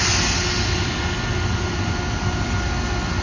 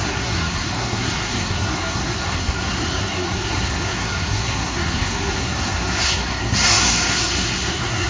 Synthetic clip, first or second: second